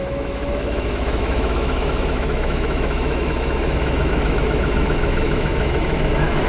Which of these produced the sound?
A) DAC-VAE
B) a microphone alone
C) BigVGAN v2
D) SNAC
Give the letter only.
A